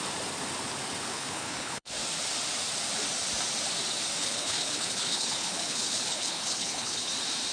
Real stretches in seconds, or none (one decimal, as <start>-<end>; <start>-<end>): 0.0-1.1; 1.9-4.2; 7.1-7.5